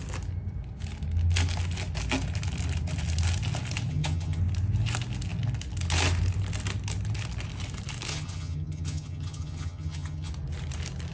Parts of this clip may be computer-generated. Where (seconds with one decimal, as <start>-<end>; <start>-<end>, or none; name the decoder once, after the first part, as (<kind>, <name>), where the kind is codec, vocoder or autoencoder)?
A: 3.9-4.4 (vocoder, HiFi-GAN); 8.1-10.3